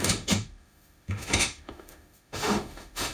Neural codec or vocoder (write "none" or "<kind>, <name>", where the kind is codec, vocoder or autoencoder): autoencoder, DAC-VAE